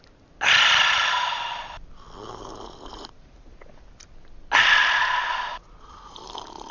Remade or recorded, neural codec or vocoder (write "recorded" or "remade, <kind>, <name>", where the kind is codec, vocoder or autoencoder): recorded